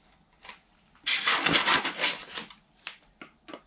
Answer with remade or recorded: recorded